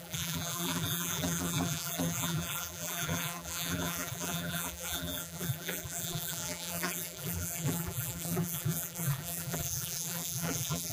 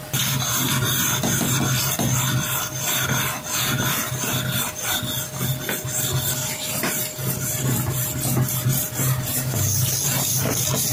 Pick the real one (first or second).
second